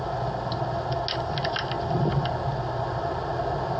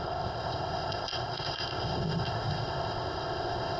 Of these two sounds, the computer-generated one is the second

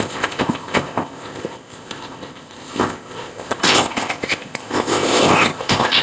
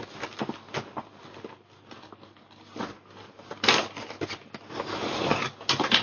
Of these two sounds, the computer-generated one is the first